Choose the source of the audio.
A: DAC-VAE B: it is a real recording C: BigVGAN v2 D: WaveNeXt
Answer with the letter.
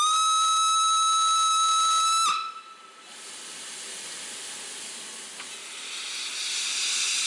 B